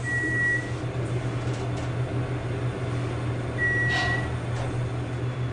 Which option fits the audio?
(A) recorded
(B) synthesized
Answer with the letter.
A